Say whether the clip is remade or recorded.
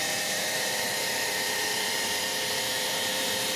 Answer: remade